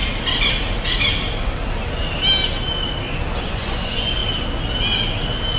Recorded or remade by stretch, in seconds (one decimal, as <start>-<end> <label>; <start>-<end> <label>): 0.0-3.4 recorded; 3.4-4.2 remade; 4.2-5.6 recorded